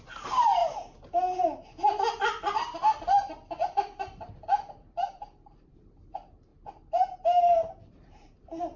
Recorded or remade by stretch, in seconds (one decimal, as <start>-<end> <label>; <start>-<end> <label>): 0.0-0.6 remade; 0.6-5.2 recorded; 5.2-6.5 remade; 6.5-7.4 recorded; 7.4-8.8 remade